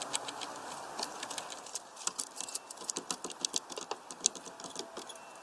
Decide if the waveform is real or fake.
real